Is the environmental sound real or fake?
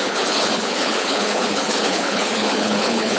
fake